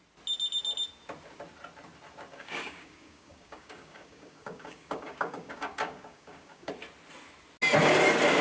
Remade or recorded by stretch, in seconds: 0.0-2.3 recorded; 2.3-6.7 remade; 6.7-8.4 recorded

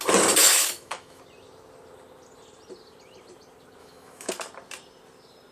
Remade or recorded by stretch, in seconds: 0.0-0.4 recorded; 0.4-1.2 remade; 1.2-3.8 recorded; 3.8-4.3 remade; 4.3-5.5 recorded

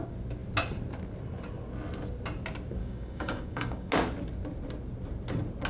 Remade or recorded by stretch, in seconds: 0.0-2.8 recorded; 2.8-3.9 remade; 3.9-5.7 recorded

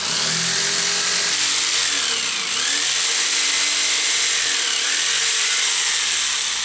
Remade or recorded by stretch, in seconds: 0.0-6.6 recorded